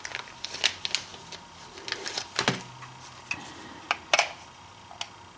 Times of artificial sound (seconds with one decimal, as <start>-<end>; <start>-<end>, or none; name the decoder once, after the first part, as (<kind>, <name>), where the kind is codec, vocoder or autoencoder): none